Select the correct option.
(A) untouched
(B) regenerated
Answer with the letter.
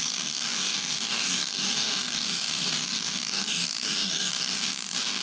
B